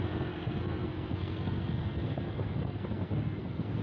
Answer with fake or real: fake